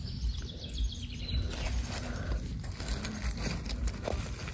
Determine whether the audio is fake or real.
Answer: real